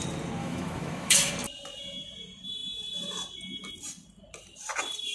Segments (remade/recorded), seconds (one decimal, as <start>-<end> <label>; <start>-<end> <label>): 0.0-0.4 recorded; 0.4-1.3 remade; 1.3-5.1 recorded